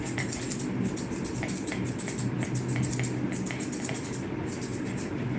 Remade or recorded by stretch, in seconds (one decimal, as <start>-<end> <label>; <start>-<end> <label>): 0.0-4.7 recorded; 4.7-5.4 remade